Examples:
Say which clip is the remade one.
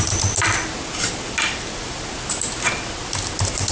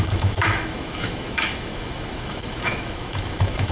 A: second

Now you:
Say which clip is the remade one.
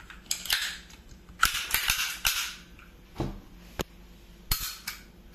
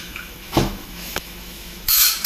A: second